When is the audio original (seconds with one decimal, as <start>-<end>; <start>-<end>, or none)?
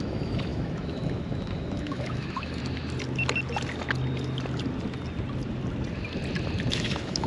2.6-6.7